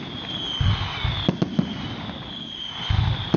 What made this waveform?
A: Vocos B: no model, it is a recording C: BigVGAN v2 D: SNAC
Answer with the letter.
B